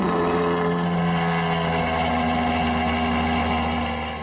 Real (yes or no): yes